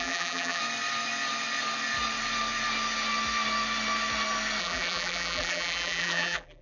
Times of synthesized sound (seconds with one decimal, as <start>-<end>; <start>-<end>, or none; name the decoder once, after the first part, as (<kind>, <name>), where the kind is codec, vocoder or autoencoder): 0.0-0.6 (vocoder, BigVGAN v2); 4.6-6.6